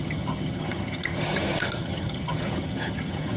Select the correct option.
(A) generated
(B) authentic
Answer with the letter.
A